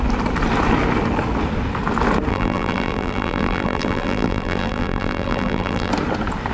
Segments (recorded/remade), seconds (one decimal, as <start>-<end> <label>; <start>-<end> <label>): 0.0-2.3 recorded; 2.3-5.9 remade; 5.9-6.5 recorded